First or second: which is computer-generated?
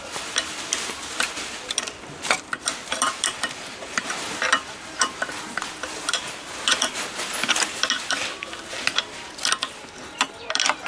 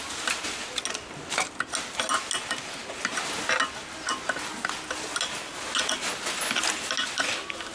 first